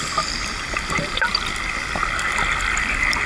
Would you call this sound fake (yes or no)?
no